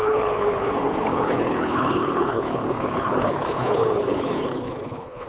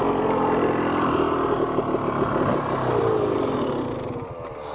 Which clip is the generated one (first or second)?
first